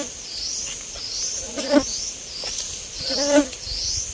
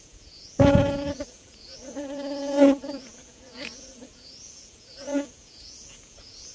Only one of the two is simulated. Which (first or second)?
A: second